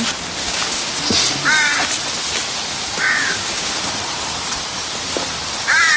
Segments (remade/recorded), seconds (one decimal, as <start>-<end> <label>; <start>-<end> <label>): 0.0-0.4 recorded; 0.4-0.9 remade; 0.9-2.7 recorded; 2.7-3.7 remade; 3.7-6.0 recorded